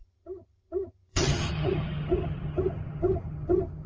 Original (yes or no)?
no